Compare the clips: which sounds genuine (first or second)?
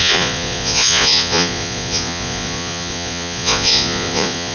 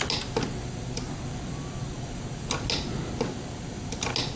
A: second